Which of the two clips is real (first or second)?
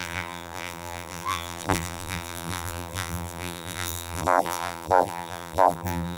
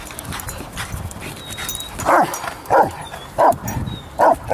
second